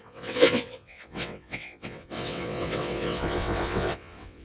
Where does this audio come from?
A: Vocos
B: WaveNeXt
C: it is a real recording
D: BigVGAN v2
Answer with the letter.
B